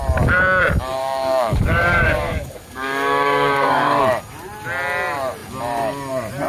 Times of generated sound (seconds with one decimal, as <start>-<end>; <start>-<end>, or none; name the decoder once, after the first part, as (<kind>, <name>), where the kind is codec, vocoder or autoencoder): 1.0-4.0 (codec, DAC)